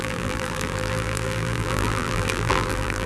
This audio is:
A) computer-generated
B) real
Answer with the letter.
A